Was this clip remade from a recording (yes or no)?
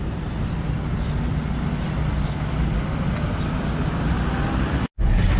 no